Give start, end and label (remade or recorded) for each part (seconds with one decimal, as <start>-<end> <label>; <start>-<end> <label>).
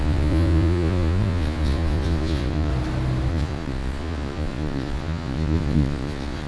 0.0-2.7 remade; 2.7-3.3 recorded; 3.3-6.5 remade